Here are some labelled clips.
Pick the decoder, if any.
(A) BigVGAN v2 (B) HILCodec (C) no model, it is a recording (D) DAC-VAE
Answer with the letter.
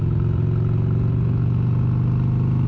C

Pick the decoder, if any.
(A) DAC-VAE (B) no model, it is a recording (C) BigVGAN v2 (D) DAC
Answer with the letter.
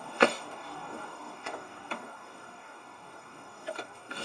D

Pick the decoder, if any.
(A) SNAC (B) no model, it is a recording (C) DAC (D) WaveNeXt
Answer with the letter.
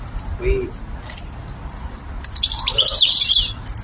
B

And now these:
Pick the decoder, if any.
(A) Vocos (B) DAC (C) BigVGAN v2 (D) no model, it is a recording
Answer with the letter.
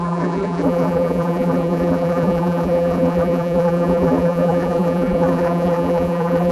C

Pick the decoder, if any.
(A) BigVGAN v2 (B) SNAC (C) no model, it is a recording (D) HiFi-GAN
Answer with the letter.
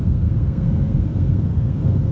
B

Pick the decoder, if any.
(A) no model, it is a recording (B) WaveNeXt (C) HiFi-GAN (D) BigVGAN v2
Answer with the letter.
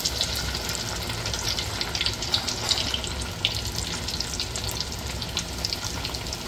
A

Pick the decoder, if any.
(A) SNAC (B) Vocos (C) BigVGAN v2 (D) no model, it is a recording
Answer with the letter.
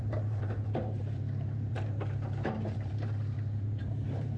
C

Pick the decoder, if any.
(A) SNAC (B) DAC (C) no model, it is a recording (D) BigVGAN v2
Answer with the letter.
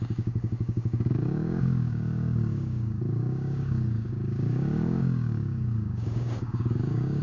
B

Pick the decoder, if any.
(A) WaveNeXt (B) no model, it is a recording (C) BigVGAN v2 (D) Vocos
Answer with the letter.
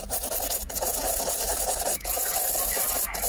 B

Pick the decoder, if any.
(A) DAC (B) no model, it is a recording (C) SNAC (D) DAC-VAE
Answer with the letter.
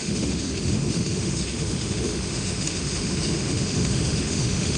D